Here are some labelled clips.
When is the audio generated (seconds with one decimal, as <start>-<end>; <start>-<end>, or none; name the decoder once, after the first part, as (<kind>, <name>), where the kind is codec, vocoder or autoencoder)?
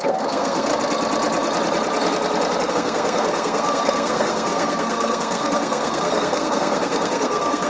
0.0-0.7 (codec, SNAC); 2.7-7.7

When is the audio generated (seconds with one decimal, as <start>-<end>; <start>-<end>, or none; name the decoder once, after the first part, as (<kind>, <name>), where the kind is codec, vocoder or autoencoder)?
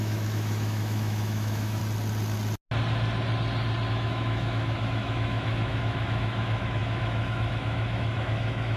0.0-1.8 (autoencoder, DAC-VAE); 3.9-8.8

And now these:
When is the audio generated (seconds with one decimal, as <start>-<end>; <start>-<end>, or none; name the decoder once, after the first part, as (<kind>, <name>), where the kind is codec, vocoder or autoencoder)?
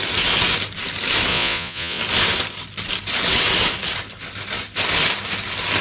1.3-2.0 (vocoder, Vocos)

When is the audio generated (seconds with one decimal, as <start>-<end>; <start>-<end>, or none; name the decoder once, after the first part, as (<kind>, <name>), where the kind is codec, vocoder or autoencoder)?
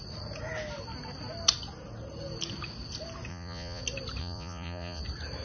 3.3-3.8 (vocoder, Vocos); 4.2-5.0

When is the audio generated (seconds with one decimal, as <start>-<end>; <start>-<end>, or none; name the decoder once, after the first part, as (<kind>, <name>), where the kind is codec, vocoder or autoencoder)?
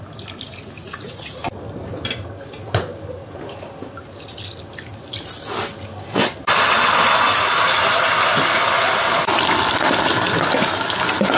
0.8-1.4 (vocoder, Vocos)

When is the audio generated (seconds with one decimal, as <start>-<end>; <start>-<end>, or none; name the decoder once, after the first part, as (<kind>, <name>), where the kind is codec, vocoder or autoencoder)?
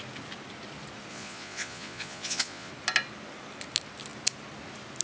1.1-2.7 (vocoder, Vocos)